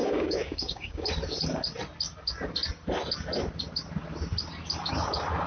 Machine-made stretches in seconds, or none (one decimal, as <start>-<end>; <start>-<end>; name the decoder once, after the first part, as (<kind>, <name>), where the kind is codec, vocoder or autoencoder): 0.0-1.1 (codec, DAC)